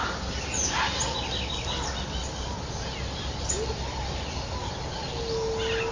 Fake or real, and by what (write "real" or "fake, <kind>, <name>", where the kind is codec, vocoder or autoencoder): real